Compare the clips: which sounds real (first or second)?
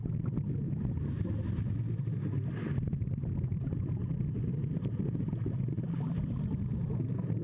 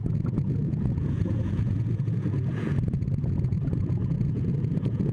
first